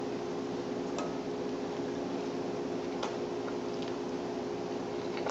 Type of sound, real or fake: real